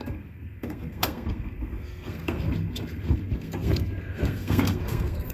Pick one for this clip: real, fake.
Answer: fake